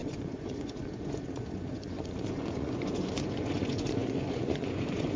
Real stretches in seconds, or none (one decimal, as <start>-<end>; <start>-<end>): none